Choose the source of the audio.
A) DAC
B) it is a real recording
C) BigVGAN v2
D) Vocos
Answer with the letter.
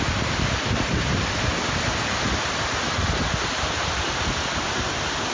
B